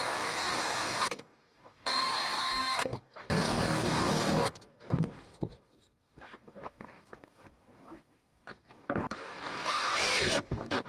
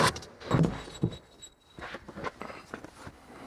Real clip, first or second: second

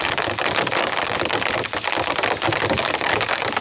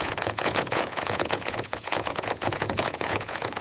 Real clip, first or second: first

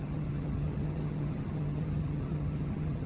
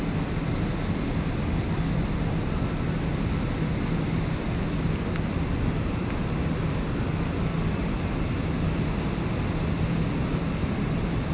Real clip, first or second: second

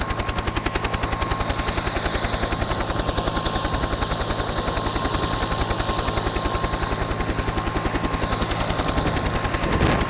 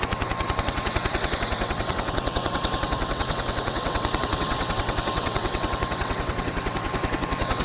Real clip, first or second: first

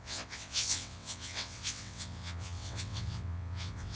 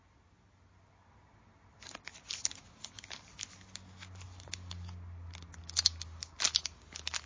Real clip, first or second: second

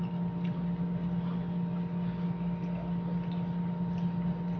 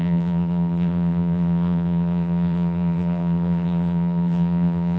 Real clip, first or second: first